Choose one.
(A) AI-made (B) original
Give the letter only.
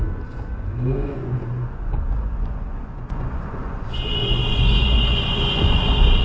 A